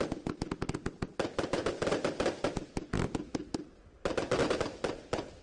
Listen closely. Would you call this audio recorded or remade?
recorded